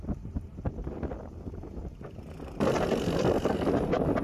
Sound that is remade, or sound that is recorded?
recorded